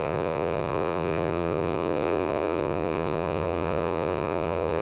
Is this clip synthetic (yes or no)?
yes